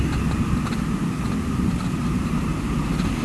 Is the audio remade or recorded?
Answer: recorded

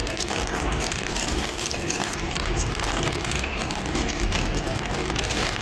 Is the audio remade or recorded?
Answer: remade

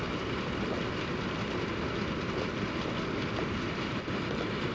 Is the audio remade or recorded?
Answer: recorded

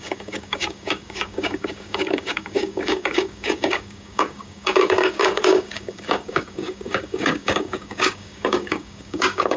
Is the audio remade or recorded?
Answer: remade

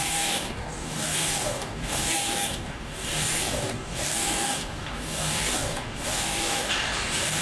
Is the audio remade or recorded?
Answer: remade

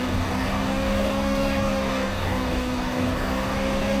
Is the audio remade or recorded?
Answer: remade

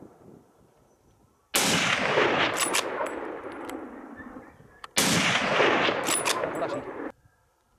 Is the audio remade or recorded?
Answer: recorded